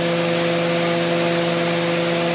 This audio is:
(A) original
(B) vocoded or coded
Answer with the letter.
A